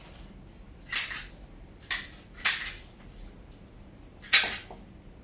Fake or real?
real